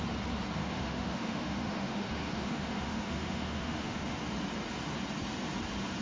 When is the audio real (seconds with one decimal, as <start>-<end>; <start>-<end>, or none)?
0.0-0.6; 4.2-6.0